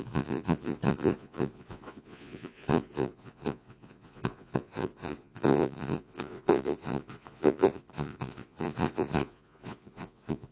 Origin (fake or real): fake